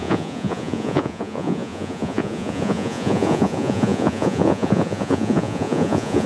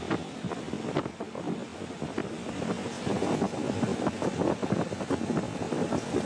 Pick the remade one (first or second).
first